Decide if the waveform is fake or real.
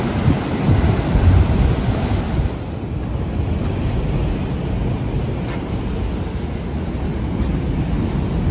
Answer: real